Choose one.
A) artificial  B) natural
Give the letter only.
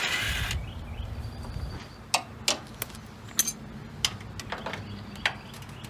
B